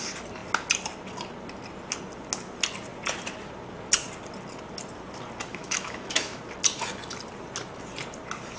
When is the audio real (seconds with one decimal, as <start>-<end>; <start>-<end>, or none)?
0.0-5.5; 6.4-8.6